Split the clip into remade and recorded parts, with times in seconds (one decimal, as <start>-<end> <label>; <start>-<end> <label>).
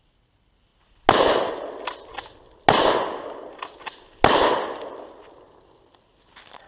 0.0-6.7 recorded